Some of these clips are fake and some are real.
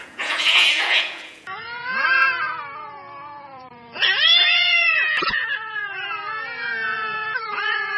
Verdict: fake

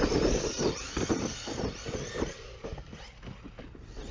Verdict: real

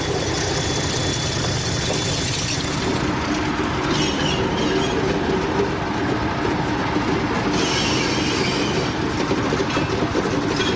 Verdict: real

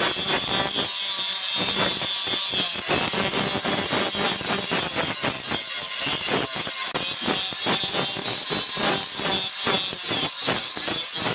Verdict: real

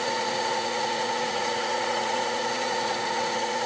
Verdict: fake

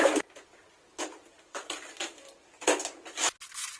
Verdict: real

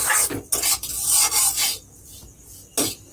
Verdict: real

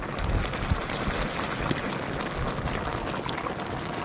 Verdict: real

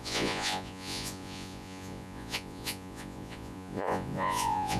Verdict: fake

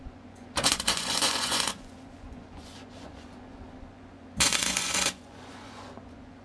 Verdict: fake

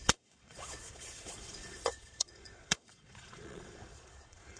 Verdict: fake